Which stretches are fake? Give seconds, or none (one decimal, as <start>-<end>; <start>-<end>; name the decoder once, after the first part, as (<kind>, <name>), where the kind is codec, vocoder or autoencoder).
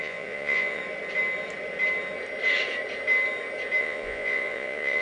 0.0-0.8 (vocoder, Vocos); 3.8-5.0